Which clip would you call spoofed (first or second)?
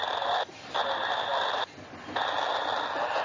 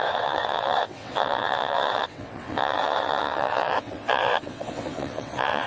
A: second